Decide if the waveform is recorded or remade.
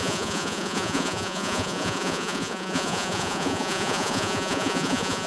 remade